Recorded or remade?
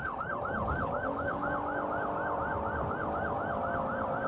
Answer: remade